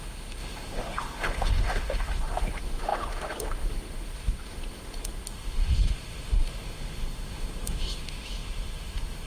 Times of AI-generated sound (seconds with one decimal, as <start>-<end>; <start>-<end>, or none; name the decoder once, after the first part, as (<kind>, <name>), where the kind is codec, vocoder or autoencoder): 0.0-9.3 (autoencoder, DAC-VAE)